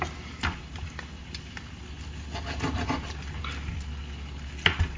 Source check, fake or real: real